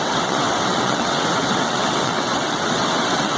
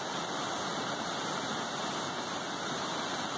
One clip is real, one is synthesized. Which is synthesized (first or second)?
first